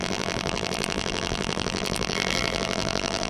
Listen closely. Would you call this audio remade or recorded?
remade